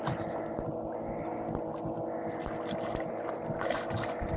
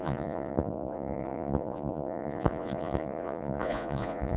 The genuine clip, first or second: first